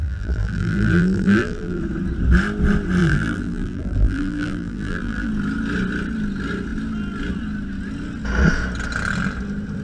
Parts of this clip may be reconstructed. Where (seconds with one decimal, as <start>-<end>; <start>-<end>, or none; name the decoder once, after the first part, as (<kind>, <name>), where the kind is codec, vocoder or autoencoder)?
0.0-1.8 (vocoder, BigVGAN v2); 3.0-5.3